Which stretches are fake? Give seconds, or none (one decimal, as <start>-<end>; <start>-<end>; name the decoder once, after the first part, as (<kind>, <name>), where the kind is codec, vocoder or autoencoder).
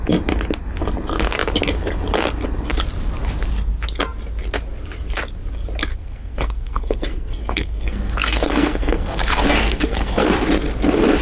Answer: 5.9-10.3 (codec, SNAC)